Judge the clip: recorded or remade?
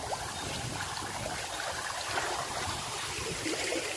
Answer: recorded